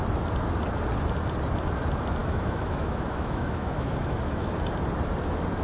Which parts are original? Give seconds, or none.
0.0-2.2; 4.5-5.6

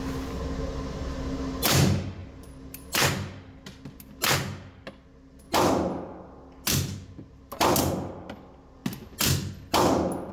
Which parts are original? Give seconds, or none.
0.0-10.3

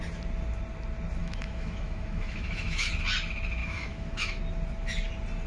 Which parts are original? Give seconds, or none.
0.0-1.2; 2.9-3.6; 4.4-5.5

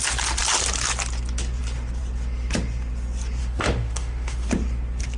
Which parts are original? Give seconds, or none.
0.0-3.4; 4.5-5.2

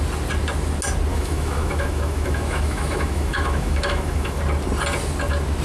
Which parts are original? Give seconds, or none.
0.0-1.1; 4.4-5.6

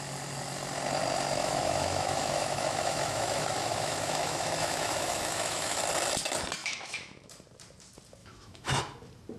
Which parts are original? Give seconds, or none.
0.0-1.4; 5.8-6.6; 7.3-8.2; 8.8-9.4

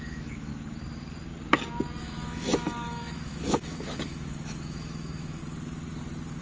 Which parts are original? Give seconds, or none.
0.5-2.0; 5.4-6.4